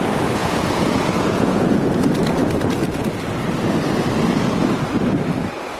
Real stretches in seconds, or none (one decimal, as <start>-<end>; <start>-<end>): 0.0-0.4; 1.9-5.8